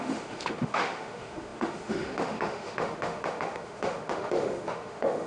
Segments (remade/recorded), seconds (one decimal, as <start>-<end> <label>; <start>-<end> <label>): 0.0-5.3 remade